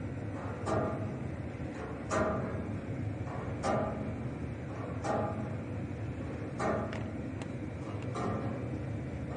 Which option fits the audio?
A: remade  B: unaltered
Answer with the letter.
B